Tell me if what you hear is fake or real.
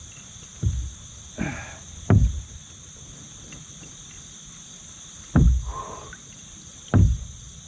real